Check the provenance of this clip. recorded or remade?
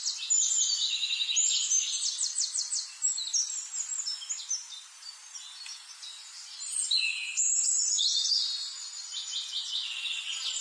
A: recorded